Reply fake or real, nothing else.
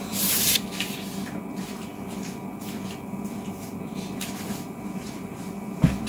real